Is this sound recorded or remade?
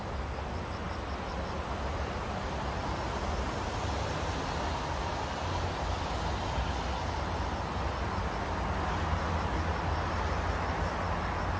recorded